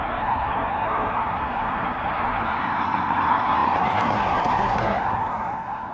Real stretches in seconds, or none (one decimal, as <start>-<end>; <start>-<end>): none